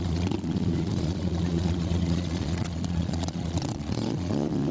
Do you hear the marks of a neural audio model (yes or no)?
yes